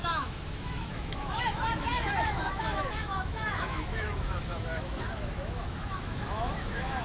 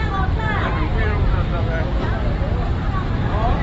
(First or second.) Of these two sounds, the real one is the second